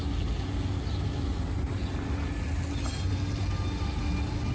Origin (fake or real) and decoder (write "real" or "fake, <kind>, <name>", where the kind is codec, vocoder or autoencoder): real